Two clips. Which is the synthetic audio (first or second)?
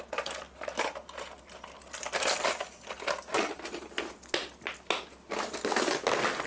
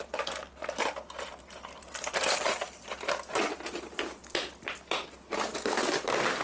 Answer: second